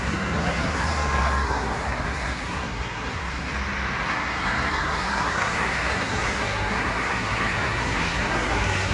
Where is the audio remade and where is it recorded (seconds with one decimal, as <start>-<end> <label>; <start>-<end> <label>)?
0.0-3.5 remade; 3.5-4.1 recorded; 4.1-8.9 remade